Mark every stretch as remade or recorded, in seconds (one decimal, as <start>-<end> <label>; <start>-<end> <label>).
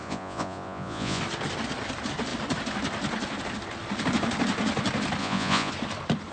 0.0-1.2 remade; 1.2-5.2 recorded; 5.2-5.7 remade; 5.7-6.3 recorded